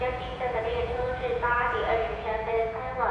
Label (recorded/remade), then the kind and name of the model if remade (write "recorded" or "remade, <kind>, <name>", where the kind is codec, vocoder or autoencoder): remade, vocoder, Vocos